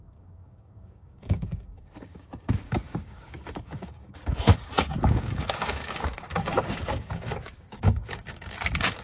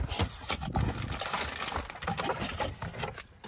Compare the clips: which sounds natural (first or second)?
second